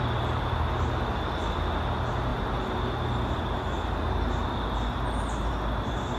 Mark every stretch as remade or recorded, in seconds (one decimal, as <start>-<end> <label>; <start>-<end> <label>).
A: 0.0-6.2 recorded